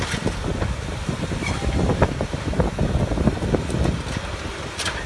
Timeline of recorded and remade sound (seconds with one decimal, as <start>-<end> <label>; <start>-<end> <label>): 0.0-5.1 recorded